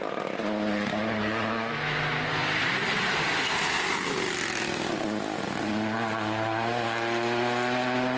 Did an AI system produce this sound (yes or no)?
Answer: no